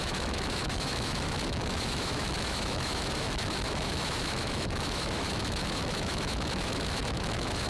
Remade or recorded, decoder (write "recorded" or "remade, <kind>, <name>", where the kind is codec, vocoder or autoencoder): remade, autoencoder, DAC-VAE